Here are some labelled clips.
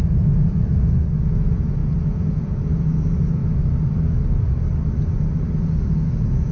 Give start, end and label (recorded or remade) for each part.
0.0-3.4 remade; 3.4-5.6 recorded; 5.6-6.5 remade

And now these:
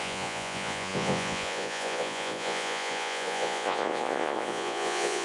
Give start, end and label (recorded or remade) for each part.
0.0-5.2 remade

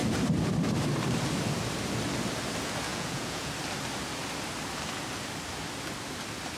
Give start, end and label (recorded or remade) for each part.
0.0-2.9 recorded; 2.9-3.5 remade; 3.5-6.6 recorded

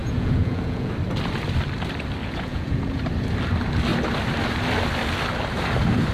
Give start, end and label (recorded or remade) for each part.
0.0-0.9 remade; 0.9-2.2 recorded; 2.2-3.0 remade; 3.0-6.1 recorded